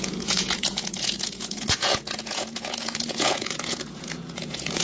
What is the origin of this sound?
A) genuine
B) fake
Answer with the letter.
B